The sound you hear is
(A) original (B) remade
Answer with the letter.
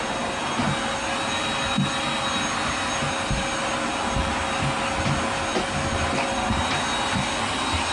A